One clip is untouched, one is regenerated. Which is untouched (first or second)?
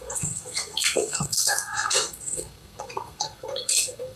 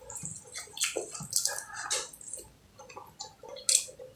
second